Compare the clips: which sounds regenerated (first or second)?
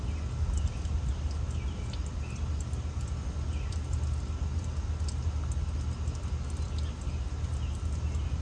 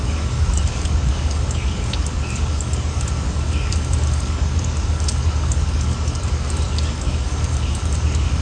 second